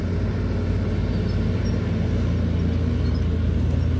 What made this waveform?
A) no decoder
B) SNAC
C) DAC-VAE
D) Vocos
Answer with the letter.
A